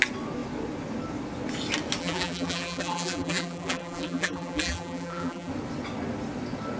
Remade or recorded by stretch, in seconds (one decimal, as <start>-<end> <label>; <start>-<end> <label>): 0.0-2.0 recorded; 2.0-5.5 remade; 5.5-6.8 recorded